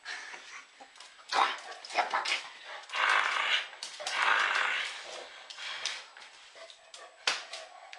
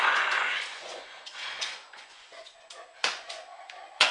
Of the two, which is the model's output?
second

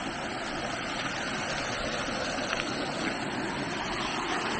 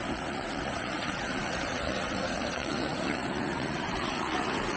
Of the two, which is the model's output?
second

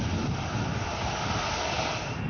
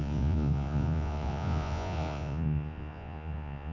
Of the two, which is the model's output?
second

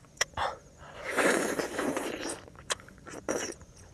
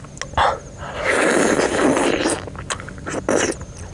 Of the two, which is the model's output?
first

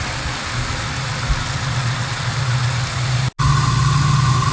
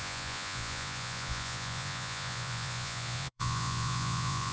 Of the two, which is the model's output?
second